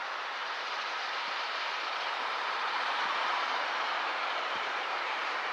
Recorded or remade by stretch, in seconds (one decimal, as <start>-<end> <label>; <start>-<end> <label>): 0.0-5.5 remade